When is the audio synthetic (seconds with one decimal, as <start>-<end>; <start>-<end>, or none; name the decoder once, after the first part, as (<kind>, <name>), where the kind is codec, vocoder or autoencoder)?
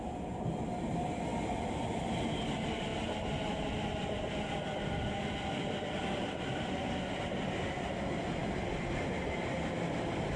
none